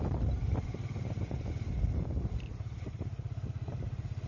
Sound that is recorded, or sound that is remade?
remade